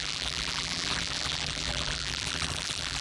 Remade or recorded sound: remade